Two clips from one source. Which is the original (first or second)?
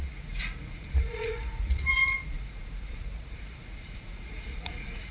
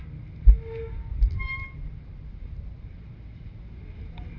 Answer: second